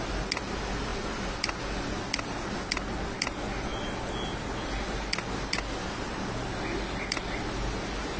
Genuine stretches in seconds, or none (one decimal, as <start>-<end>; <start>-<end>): 0.0-8.2